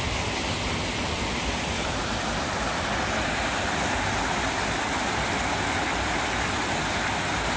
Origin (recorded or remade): remade